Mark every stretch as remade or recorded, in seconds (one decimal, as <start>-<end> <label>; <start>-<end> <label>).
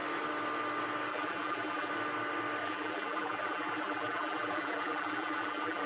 0.0-1.1 recorded; 1.1-1.9 remade; 1.9-2.6 recorded; 2.6-5.9 remade